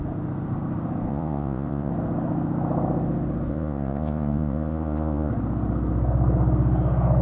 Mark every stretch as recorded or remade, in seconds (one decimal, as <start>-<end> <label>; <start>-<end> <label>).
0.0-1.1 recorded; 1.1-1.9 remade; 1.9-3.5 recorded; 3.5-5.3 remade; 5.3-7.2 recorded